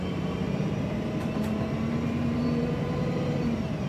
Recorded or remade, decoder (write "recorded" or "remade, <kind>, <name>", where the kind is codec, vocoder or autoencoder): remade, vocoder, BigVGAN v2